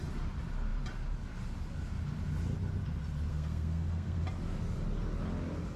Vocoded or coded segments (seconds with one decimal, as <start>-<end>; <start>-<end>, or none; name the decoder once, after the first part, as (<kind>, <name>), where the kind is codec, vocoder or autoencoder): 3.3-4.2 (codec, SNAC)